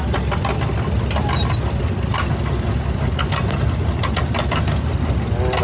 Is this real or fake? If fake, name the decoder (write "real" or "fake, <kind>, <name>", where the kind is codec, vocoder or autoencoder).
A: real